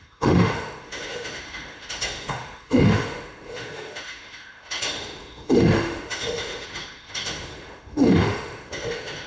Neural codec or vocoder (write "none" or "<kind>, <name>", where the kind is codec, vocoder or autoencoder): autoencoder, DAC-VAE